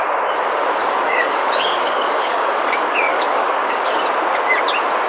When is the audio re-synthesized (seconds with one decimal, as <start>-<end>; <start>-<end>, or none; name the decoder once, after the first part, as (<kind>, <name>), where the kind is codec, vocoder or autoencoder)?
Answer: 0.8-3.9 (codec, DAC)